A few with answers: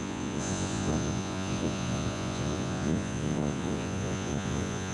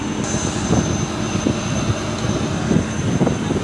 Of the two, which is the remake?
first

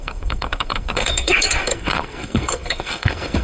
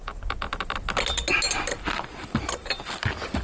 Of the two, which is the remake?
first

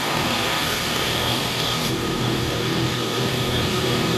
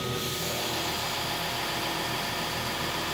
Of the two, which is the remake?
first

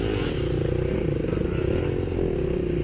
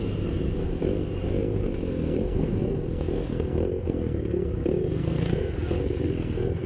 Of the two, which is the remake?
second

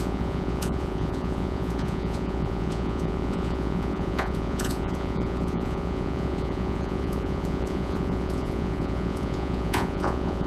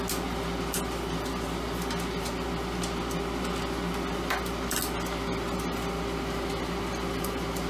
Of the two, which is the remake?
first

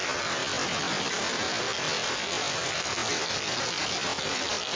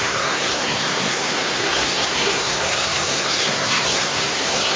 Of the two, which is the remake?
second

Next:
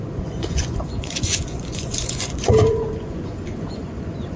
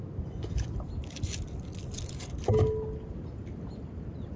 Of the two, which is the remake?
first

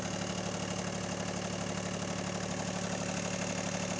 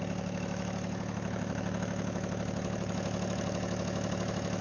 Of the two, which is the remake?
second